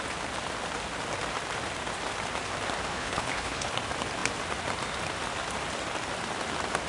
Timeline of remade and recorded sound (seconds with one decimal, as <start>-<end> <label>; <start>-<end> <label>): 0.0-2.9 recorded; 2.9-3.7 remade; 3.7-6.9 recorded